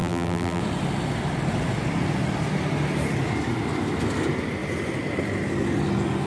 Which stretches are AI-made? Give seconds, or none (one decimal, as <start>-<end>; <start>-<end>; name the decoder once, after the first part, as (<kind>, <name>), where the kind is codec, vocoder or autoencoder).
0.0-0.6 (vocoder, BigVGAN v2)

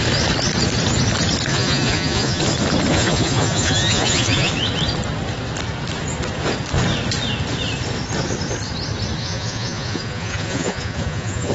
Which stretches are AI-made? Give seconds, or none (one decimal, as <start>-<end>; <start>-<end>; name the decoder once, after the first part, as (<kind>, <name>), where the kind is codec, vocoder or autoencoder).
1.5-2.4 (vocoder, Vocos); 2.9-4.5; 9.2-11.5

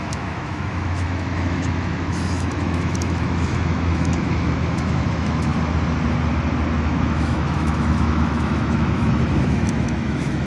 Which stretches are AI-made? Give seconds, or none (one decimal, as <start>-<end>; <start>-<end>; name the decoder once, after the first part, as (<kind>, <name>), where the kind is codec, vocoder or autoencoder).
0.0-5.5 (autoencoder, DAC-VAE); 6.8-10.5

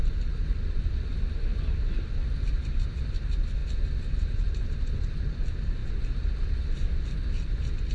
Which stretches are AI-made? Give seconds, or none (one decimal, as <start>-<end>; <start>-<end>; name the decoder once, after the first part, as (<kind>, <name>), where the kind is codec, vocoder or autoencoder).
0.0-3.6 (vocoder, BigVGAN v2); 5.2-5.8; 6.6-7.9

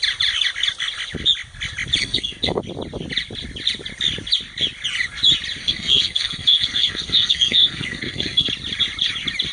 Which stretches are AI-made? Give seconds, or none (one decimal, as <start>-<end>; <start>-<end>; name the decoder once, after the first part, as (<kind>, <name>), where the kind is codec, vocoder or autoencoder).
2.0-2.6 (codec, SNAC); 5.6-8.5